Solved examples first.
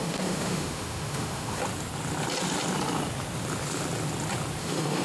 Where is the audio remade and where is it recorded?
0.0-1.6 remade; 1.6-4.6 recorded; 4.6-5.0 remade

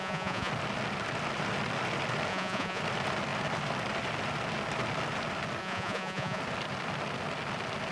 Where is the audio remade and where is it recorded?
0.0-0.5 remade; 0.5-2.3 recorded; 2.3-2.8 remade; 2.8-5.6 recorded; 5.6-6.4 remade; 6.4-7.9 recorded

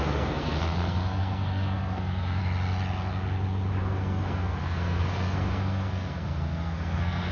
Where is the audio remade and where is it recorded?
0.0-2.4 remade; 2.4-3.8 recorded; 3.8-7.3 remade